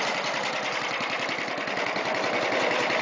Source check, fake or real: real